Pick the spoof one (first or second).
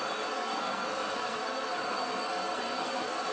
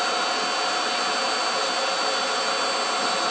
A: first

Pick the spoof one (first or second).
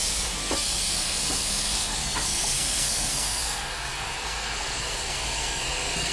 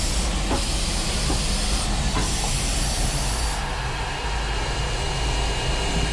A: first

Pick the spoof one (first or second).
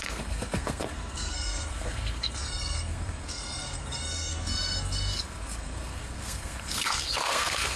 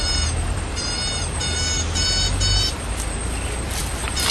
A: first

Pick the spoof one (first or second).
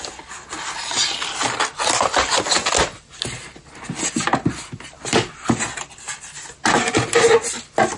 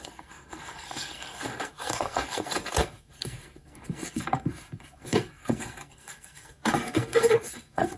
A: second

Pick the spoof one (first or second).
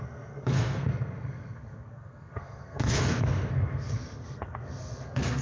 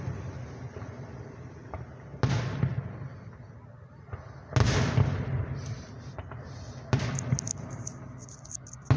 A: first